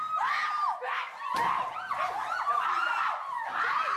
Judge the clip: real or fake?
real